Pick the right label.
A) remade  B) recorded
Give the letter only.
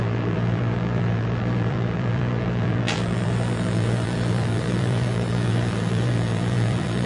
A